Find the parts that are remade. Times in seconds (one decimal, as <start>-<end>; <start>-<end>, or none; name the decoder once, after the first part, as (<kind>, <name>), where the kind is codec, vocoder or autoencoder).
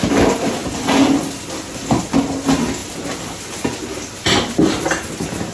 0.6-1.2 (vocoder, BigVGAN v2); 2.8-3.4